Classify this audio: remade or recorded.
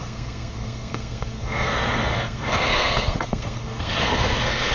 remade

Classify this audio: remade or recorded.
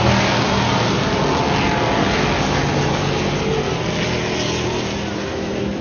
recorded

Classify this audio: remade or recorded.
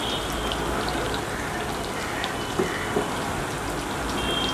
recorded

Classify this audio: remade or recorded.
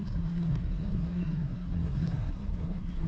remade